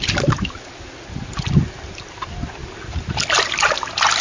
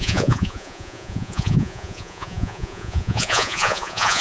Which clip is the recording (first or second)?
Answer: first